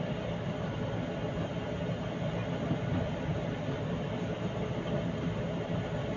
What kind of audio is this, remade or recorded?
recorded